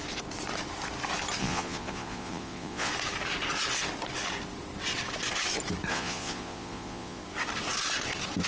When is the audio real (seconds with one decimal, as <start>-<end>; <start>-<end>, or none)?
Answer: 0.0-1.4; 2.9-5.9; 7.2-8.5